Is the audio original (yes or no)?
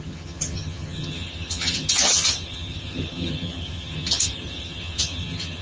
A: no